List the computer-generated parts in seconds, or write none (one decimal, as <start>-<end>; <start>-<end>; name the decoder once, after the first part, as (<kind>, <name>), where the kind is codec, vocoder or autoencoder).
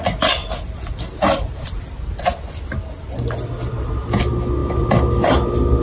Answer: 0.4-2.5 (vocoder, BigVGAN v2); 4.6-5.3